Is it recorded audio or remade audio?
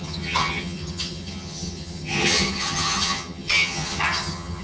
remade